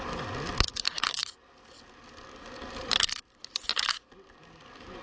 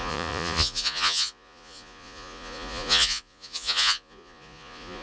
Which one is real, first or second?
first